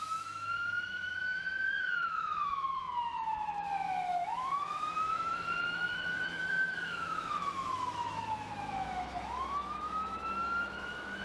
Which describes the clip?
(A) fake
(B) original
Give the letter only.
A